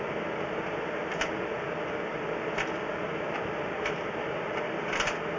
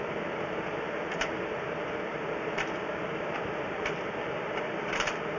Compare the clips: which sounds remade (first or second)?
second